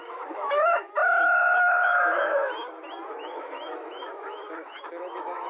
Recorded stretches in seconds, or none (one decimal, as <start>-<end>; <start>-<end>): 2.4-3.1